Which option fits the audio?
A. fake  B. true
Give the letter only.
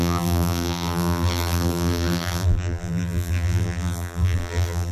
A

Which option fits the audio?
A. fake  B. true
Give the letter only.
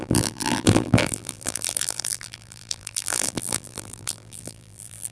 A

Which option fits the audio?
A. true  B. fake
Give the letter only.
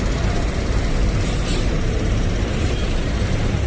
B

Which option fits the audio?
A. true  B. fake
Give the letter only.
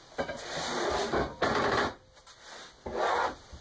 A